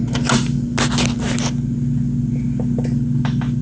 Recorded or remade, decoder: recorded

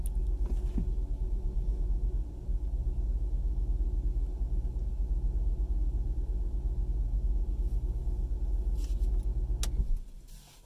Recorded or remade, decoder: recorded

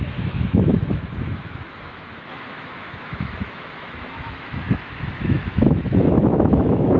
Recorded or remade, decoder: remade, autoencoder, DAC-VAE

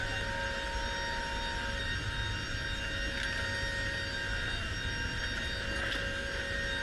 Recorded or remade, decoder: recorded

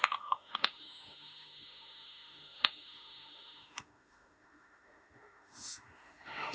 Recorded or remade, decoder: remade, autoencoder, DAC-VAE